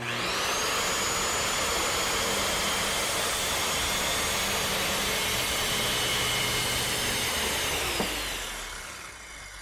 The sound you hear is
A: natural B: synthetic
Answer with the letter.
A